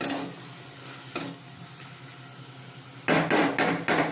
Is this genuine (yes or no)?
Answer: yes